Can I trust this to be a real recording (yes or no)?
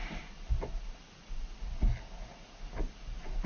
yes